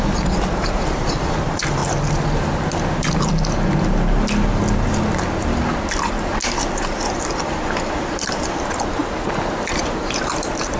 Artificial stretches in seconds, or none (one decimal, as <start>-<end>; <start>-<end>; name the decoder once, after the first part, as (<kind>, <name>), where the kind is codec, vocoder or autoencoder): 0.0-1.8 (vocoder, BigVGAN v2); 6.7-9.0; 9.8-10.8